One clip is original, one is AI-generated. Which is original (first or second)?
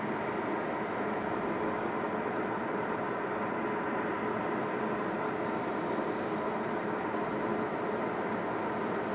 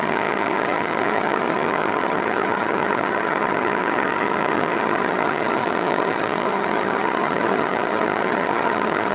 first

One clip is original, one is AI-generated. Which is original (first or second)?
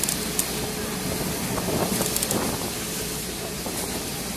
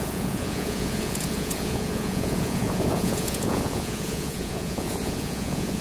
first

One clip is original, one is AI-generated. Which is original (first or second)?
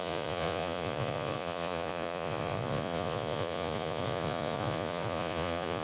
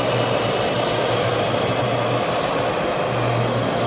second